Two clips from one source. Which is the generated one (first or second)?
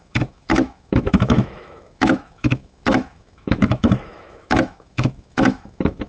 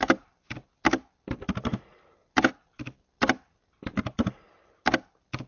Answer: first